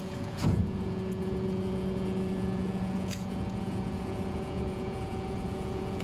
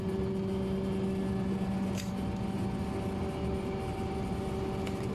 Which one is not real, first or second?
first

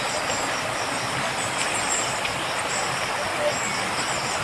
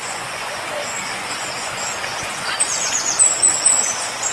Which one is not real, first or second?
second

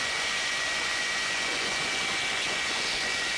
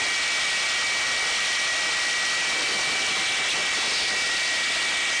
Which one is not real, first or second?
first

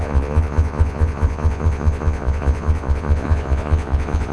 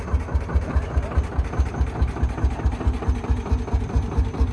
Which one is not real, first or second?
first